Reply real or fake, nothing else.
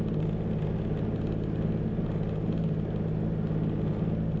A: real